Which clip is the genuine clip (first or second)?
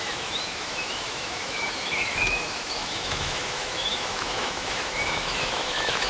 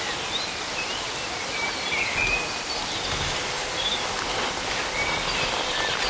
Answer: second